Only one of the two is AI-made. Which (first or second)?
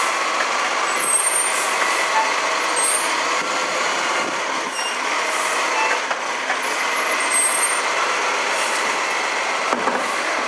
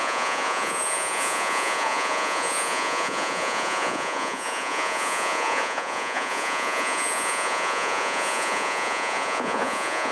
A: second